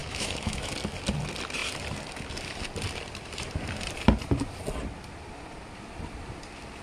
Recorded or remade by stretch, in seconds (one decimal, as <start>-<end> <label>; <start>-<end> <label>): 0.0-0.7 remade; 0.7-6.8 recorded